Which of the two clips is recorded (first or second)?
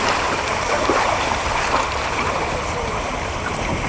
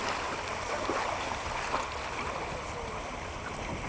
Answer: second